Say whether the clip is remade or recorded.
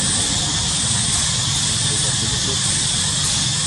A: recorded